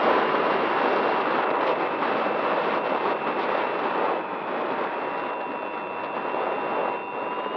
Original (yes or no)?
yes